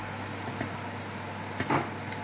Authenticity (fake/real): real